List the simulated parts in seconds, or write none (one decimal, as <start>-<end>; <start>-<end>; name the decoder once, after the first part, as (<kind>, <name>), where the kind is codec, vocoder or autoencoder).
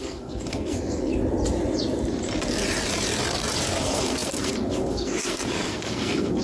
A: 0.0-1.1 (codec, SNAC); 3.8-6.4